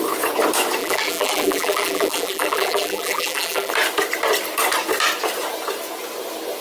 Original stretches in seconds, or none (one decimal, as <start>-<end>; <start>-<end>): 0.0-0.8; 3.7-6.6